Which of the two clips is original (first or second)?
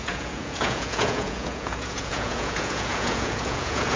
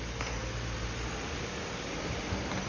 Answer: second